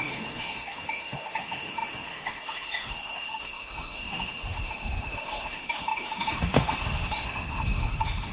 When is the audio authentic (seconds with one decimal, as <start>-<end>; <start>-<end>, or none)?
none